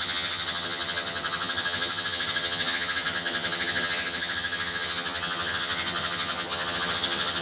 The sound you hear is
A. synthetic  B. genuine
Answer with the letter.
A